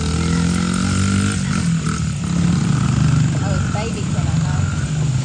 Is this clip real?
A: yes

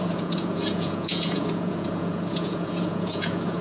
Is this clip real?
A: no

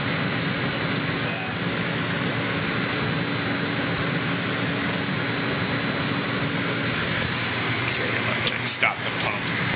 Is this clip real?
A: yes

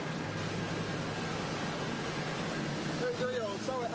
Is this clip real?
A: yes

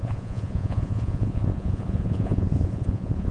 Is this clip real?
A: no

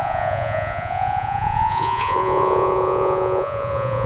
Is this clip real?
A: no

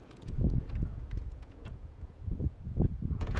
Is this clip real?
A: no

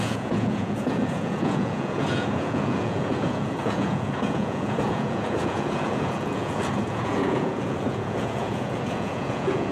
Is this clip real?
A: no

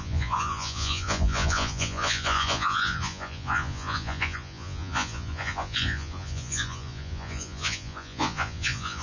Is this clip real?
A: no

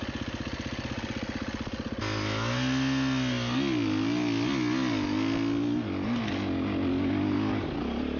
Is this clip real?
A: yes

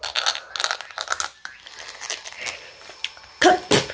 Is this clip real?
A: yes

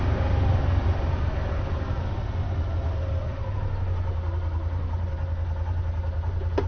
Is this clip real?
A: yes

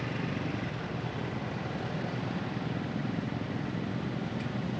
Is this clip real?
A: yes